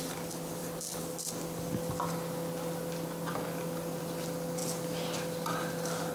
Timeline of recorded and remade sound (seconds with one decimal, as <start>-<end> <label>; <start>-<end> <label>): 0.0-6.1 recorded

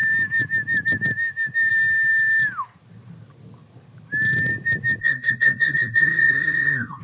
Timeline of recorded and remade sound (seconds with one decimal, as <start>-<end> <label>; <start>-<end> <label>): 0.0-5.0 recorded; 5.0-7.0 remade